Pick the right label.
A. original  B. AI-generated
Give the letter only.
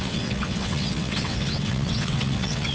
B